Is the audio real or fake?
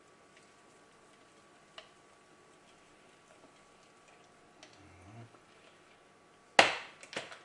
real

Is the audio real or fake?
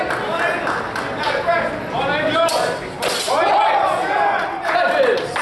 real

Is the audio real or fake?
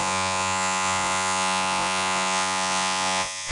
fake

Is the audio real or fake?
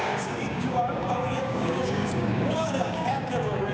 fake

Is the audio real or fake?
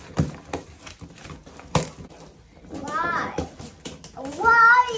real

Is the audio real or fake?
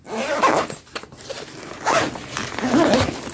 real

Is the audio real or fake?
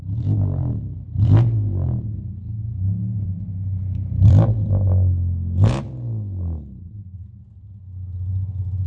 real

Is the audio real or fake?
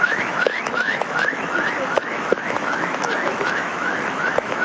fake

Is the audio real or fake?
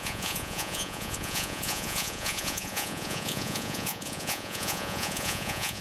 fake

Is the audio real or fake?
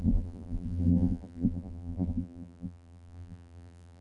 fake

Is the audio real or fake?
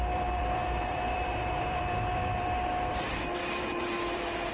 fake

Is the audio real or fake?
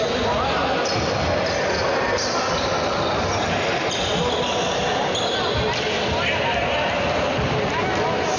real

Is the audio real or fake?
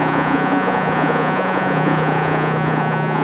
fake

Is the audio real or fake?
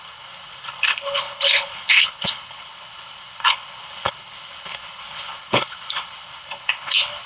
fake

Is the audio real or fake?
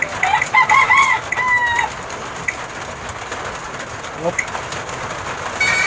real